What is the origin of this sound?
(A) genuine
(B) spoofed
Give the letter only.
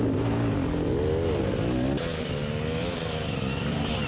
A